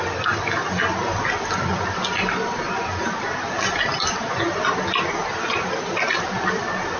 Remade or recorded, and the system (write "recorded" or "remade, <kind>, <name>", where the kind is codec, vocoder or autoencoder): recorded